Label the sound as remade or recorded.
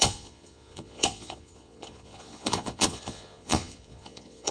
remade